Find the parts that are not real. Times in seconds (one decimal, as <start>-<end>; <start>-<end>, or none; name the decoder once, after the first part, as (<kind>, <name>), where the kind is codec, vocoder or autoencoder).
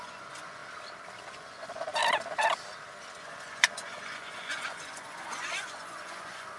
0.0-0.6 (vocoder, Vocos); 1.3-2.0; 3.2-6.6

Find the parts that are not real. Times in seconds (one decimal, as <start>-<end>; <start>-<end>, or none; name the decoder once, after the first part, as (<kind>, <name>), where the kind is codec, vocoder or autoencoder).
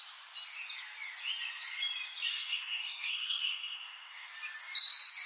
2.3-4.3 (codec, SNAC)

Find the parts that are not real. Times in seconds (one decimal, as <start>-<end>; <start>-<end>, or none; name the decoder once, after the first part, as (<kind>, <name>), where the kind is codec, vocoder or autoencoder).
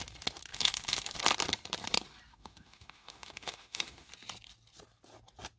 0.5-1.2 (autoencoder, DAC-VAE); 2.3-4.1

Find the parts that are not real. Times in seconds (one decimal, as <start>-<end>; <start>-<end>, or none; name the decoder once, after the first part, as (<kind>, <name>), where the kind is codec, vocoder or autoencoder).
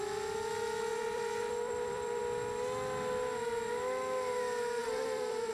0.9-2.2 (vocoder, BigVGAN v2); 4.8-5.5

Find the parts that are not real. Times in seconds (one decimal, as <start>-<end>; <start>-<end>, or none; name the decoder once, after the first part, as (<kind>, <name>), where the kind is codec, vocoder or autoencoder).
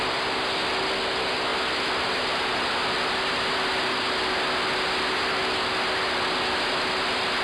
none